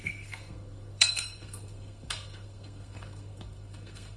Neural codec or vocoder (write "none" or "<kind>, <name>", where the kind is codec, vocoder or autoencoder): codec, SNAC